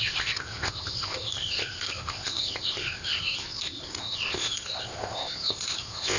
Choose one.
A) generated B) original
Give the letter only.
A